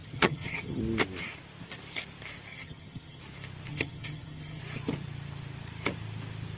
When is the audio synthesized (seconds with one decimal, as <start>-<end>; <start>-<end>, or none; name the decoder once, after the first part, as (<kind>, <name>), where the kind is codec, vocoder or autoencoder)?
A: 0.0-0.8 (vocoder, HiFi-GAN); 2.5-3.2; 3.7-4.6